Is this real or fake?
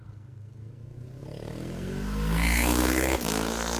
fake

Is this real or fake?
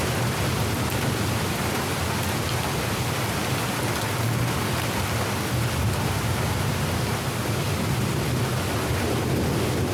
real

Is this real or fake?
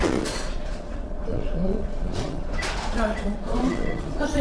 fake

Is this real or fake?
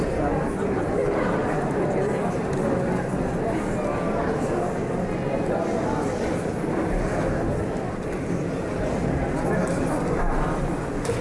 real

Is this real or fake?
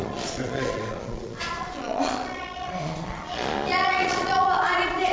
fake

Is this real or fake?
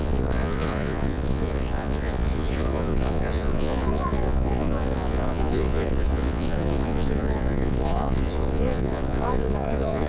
fake